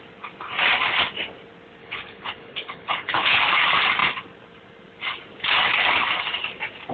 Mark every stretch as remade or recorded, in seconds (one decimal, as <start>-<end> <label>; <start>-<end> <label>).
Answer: 0.0-1.8 recorded; 1.8-3.4 remade; 3.4-6.9 recorded